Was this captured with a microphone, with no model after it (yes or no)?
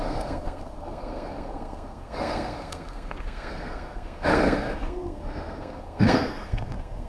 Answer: no